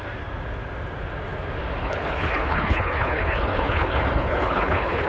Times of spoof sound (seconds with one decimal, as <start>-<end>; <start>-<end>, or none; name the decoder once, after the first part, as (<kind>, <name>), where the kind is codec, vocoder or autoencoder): 1.8-5.1 (codec, HILCodec)